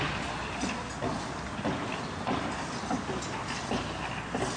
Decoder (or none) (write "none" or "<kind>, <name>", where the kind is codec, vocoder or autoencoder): none